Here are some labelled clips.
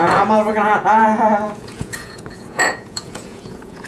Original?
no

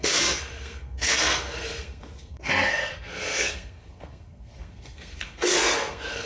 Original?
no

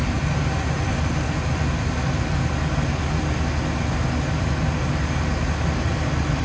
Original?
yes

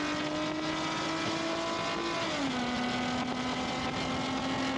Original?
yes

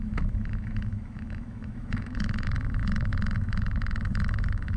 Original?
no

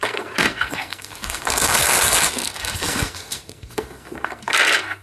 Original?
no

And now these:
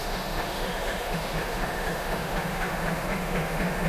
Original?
no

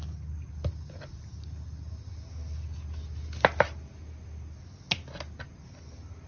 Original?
yes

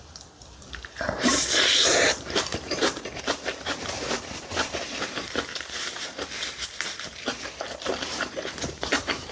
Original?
no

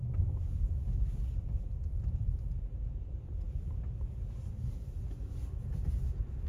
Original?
yes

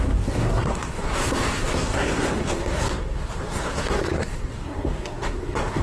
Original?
no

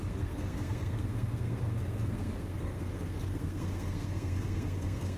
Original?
no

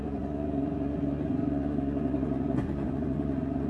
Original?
no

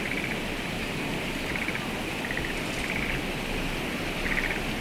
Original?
yes